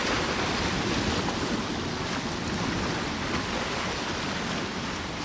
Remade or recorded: recorded